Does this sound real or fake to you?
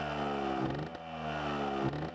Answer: real